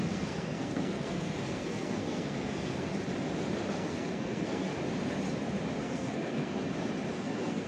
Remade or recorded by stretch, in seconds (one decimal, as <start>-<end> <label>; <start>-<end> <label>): 0.0-2.9 remade; 2.9-3.7 recorded; 3.7-4.7 remade; 4.7-5.8 recorded; 5.8-6.6 remade; 6.6-7.2 recorded; 7.2-7.7 remade